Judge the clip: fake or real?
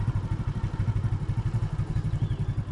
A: real